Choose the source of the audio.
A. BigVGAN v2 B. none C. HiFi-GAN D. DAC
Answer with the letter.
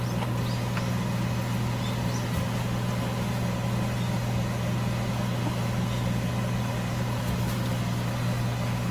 B